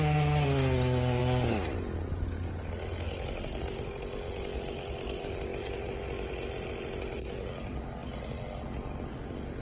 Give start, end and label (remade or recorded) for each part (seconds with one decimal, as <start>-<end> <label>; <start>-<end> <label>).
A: 0.0-9.6 recorded